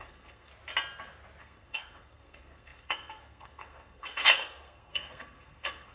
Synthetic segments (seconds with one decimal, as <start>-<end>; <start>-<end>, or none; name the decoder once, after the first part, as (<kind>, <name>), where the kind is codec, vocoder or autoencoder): 0.0-0.5 (codec, SNAC); 1.4-5.9

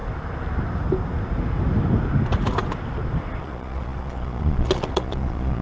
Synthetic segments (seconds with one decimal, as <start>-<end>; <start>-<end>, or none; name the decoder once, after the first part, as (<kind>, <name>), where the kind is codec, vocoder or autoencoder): 3.4-5.6 (vocoder, Vocos)

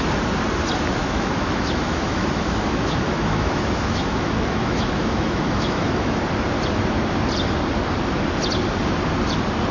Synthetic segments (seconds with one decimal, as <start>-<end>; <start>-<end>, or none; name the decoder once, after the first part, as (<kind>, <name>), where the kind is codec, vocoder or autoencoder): 1.0-6.2 (autoencoder, DAC-VAE)

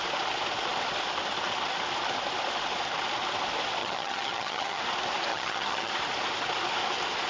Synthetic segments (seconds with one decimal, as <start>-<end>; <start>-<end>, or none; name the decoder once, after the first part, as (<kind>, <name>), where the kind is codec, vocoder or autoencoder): 3.8-4.8 (vocoder, HiFi-GAN); 5.3-5.9

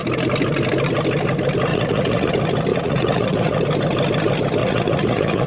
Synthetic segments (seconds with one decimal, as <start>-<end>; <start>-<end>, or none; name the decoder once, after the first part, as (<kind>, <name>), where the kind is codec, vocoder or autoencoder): 1.7-2.3 (vocoder, Vocos); 2.7-3.6; 4.6-5.5

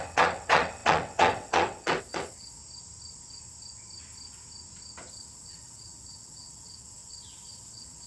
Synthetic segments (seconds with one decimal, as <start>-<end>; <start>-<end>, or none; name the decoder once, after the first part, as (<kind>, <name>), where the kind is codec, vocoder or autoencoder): 0.0-2.6 (vocoder, WaveNeXt); 5.1-8.1